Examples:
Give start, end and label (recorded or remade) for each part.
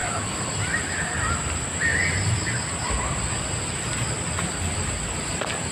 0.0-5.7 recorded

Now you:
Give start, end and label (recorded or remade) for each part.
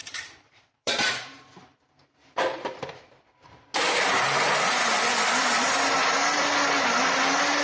0.0-3.5 remade; 3.5-7.6 recorded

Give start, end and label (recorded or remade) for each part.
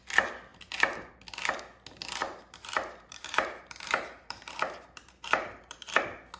0.0-0.5 recorded; 0.5-1.1 remade; 1.1-2.2 recorded; 2.2-6.0 remade; 6.0-6.4 recorded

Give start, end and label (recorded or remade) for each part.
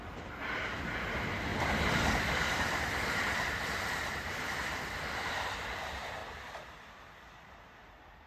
0.0-1.5 recorded; 1.5-5.8 remade; 5.8-8.3 recorded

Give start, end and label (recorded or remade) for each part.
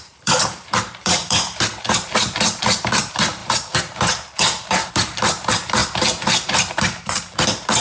0.0-1.7 remade; 1.7-2.8 recorded; 2.8-7.8 remade